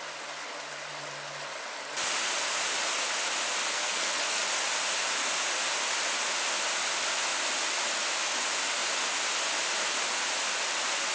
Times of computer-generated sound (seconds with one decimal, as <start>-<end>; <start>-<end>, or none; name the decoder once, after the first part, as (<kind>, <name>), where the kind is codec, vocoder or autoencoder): 3.7-4.4 (codec, SNAC)